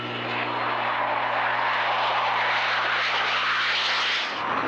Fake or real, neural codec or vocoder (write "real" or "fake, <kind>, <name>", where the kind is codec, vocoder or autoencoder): real